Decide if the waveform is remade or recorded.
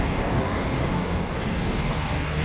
remade